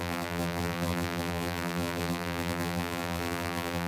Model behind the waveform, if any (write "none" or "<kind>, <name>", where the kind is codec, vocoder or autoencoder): vocoder, BigVGAN v2